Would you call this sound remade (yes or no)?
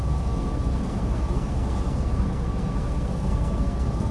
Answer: yes